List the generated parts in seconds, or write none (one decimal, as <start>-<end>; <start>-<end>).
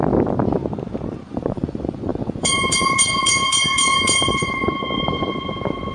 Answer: 1.2-5.9